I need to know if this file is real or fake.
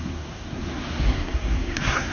fake